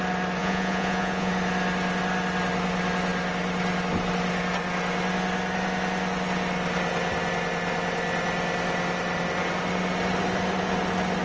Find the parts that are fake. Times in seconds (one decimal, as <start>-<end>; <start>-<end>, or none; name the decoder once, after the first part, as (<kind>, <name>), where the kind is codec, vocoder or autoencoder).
0.4-1.3 (vocoder, Vocos)